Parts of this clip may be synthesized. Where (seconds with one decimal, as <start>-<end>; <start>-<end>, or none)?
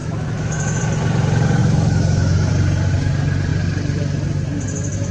0.0-0.8; 1.6-2.5